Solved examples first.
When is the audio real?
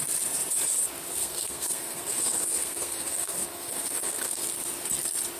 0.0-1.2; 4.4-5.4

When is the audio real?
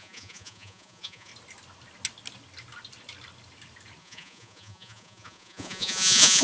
1.3-4.0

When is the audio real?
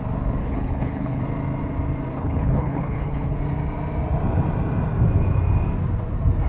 0.0-0.4; 1.2-2.1; 3.4-6.5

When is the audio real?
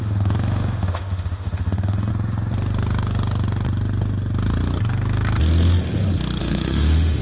2.1-6.4